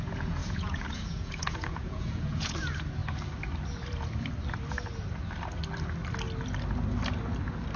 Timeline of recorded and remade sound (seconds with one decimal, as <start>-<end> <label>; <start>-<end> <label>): 0.0-3.0 remade; 3.0-7.8 recorded